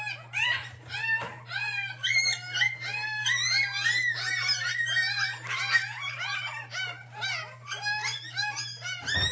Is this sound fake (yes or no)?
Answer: no